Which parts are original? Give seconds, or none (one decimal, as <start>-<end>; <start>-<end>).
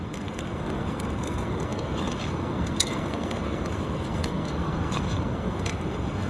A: none